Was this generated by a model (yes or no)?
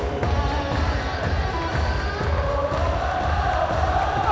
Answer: no